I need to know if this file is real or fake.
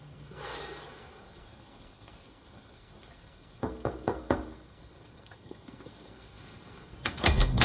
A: fake